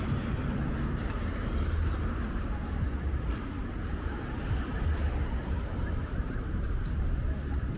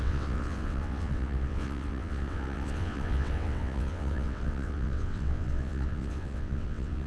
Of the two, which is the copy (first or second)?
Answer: second